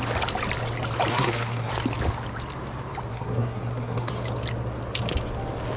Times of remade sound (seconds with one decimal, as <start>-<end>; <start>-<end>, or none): 1.1-1.7; 3.1-4.1